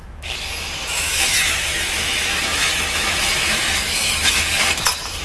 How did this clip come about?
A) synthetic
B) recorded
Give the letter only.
A